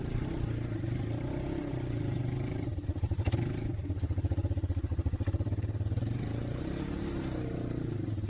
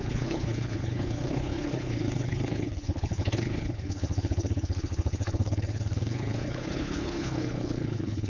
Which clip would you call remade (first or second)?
second